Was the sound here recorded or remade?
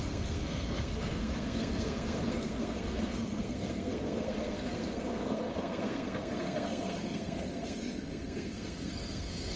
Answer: remade